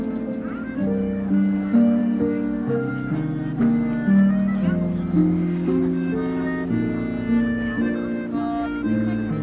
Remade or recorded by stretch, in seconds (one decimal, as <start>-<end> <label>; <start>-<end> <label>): 0.0-2.0 recorded; 2.0-2.9 remade; 2.9-5.2 recorded; 5.2-6.1 remade; 6.1-9.4 recorded